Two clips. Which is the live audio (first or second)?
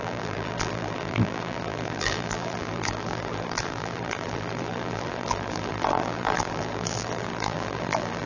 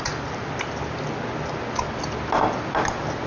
second